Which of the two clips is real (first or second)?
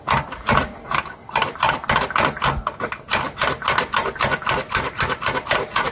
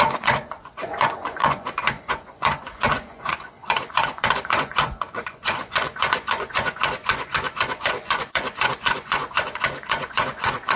first